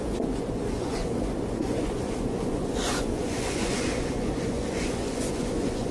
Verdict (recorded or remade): remade